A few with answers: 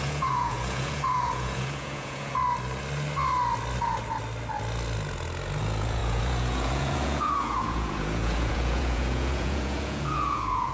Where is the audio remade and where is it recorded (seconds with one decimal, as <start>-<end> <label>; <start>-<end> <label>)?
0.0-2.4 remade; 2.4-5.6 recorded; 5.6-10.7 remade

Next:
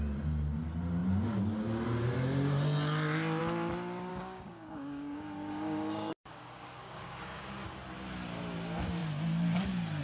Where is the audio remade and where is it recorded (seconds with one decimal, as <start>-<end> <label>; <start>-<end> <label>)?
0.0-4.1 recorded; 4.1-7.5 remade; 7.5-10.0 recorded

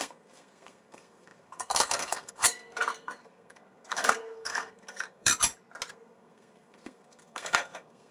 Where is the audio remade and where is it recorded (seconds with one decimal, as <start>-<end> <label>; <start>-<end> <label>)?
0.0-5.3 remade; 5.3-5.9 recorded; 5.9-8.1 remade

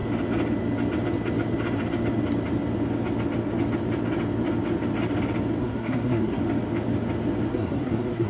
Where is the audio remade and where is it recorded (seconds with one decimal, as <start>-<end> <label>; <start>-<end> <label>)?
0.0-5.6 recorded; 5.6-6.4 remade; 6.4-7.5 recorded; 7.5-8.3 remade

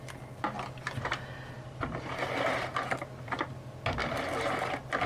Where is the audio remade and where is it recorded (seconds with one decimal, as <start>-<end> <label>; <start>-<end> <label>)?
0.0-5.1 recorded

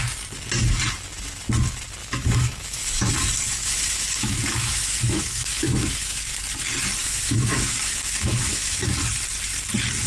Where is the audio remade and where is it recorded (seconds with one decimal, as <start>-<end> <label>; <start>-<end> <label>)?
0.0-2.0 recorded; 2.0-3.1 remade; 3.1-3.6 recorded; 3.6-6.4 remade; 6.4-7.0 recorded; 7.0-8.9 remade; 8.9-10.1 recorded

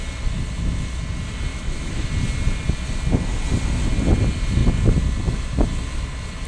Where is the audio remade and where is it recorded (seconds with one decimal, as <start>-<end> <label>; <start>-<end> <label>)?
0.0-1.5 recorded; 1.5-2.1 remade; 2.1-6.5 recorded

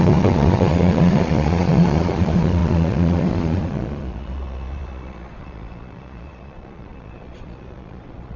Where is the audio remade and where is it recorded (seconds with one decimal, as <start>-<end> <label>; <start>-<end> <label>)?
0.0-8.4 remade